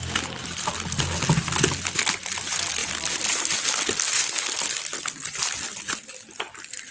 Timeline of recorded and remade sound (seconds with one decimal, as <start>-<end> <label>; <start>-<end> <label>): 0.0-6.9 recorded